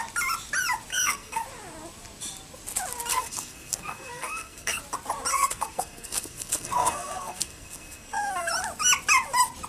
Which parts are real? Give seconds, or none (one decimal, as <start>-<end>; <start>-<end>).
0.0-0.9; 1.4-3.1; 4.8-5.3; 8.5-9.7